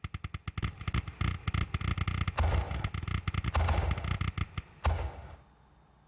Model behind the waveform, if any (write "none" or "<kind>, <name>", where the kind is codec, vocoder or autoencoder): none